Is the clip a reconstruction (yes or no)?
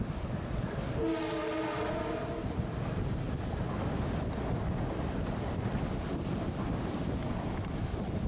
no